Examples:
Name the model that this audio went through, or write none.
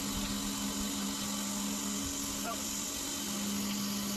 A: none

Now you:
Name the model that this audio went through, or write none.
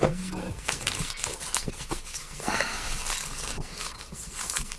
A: codec, SNAC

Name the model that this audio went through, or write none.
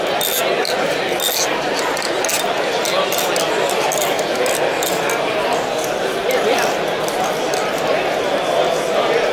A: none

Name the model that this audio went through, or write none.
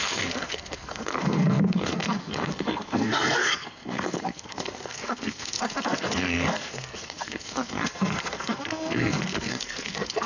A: codec, SNAC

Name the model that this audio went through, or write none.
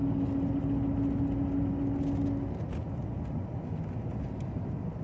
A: none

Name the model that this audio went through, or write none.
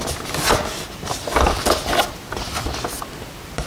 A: none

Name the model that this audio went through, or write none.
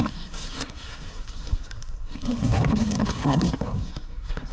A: codec, SNAC